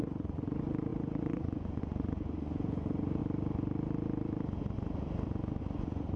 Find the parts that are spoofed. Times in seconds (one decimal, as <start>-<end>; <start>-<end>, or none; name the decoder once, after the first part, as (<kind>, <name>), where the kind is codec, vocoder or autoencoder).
0.0-3.2 (vocoder, Vocos); 5.6-6.2